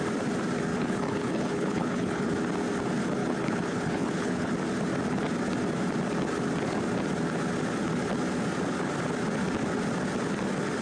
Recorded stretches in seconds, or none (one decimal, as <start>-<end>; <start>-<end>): 0.0-0.7; 2.3-3.2; 4.5-10.8